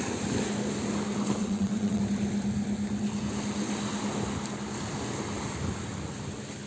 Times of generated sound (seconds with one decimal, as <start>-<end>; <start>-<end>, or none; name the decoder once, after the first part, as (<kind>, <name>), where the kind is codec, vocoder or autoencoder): 1.4-2.0 (vocoder, WaveNeXt)